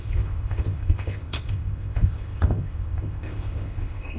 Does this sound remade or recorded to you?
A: remade